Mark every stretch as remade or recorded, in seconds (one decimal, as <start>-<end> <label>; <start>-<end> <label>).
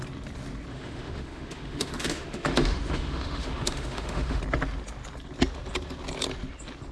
0.0-0.7 recorded; 0.7-4.4 remade; 4.4-6.9 recorded